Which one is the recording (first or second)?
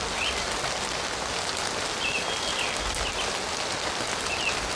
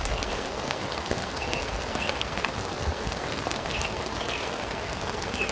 first